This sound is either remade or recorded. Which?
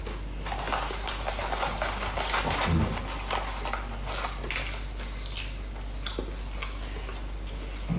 recorded